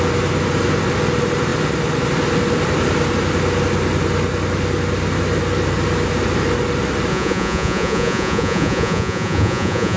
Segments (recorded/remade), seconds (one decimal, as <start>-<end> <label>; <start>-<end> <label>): 0.0-7.1 recorded; 7.1-10.0 remade